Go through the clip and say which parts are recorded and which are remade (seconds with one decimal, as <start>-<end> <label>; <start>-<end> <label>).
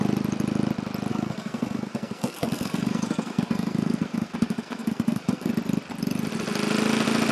0.0-1.1 recorded; 1.1-5.5 remade; 5.5-7.3 recorded